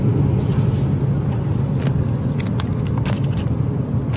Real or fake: real